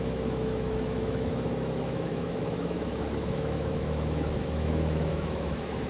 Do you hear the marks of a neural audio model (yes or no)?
yes